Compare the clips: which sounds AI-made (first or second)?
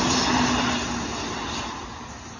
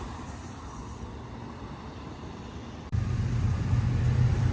second